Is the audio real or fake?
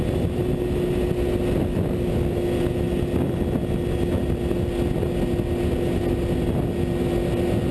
real